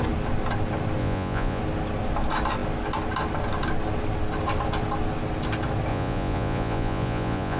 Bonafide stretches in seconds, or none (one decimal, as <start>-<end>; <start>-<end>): 0.0-1.0; 1.6-5.9